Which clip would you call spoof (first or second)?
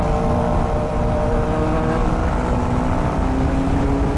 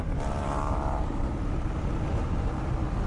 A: second